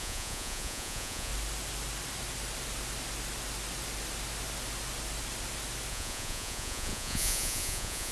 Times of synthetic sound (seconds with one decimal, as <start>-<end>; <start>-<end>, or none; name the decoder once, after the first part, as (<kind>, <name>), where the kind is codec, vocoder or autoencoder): 0.0-1.3 (vocoder, Vocos); 5.9-8.1